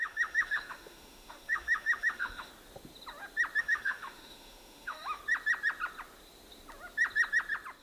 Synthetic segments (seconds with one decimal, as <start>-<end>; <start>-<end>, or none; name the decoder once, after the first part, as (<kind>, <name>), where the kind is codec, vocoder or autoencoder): 0.0-2.5 (autoencoder, DAC-VAE); 3.6-5.2